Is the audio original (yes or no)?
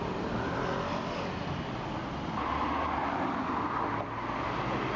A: yes